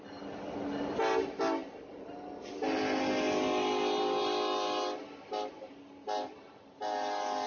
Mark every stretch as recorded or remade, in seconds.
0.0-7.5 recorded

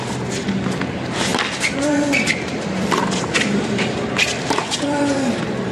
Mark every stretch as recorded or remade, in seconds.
0.0-5.7 recorded